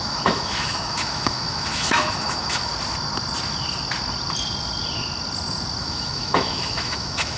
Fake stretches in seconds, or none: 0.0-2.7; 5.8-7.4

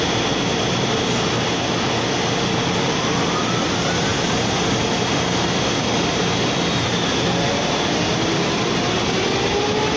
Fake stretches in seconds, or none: none

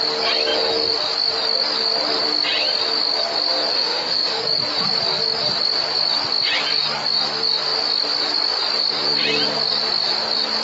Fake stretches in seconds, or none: 3.7-4.4